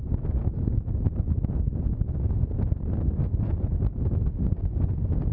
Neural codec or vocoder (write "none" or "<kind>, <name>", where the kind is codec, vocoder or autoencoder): none